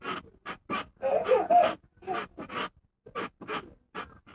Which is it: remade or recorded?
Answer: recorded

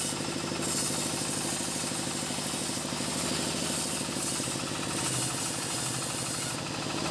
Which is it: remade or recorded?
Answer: recorded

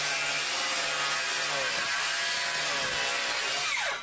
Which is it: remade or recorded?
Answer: recorded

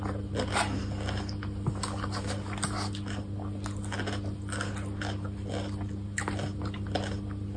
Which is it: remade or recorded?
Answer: recorded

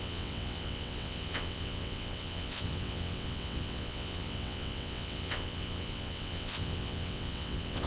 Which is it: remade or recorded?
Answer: remade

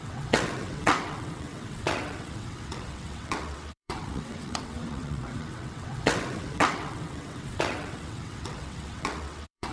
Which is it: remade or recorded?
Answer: remade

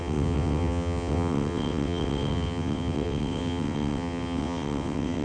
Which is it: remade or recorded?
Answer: remade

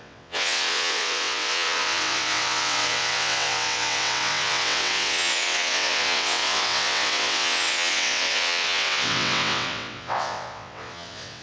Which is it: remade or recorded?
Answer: remade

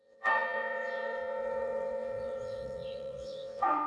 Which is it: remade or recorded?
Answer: remade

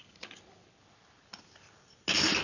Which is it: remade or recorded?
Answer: recorded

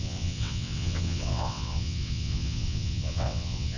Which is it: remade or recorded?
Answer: remade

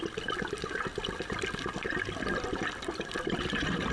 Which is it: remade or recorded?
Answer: recorded